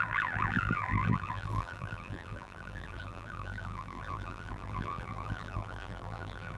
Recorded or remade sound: remade